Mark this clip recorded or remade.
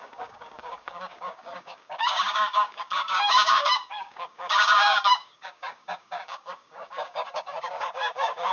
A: remade